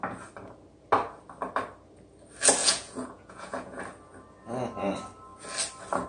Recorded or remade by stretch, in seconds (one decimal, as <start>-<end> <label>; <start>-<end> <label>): 0.0-2.6 recorded; 2.6-3.8 remade; 3.8-6.1 recorded